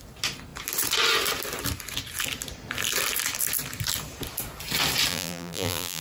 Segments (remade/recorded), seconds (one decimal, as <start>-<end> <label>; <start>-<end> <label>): 0.0-5.1 recorded; 5.1-6.0 remade